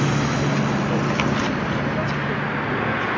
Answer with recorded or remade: recorded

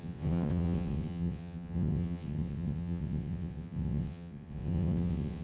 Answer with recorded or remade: remade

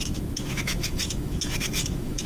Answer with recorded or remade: remade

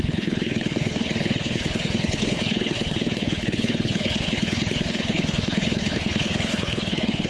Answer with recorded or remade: remade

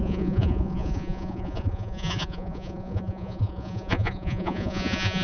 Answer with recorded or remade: remade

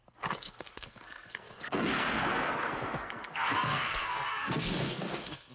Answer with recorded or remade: remade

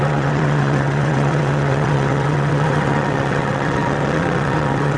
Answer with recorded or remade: remade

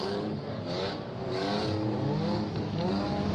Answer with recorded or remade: remade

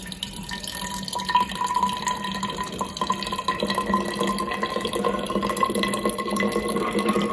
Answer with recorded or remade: recorded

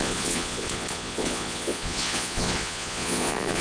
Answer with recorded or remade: remade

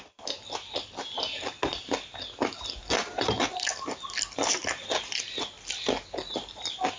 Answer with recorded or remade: recorded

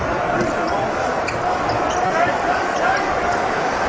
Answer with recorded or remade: recorded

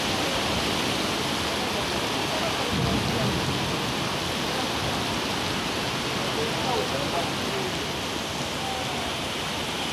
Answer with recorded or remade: recorded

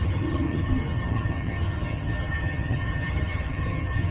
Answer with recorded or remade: remade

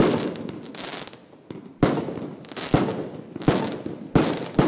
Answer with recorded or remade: recorded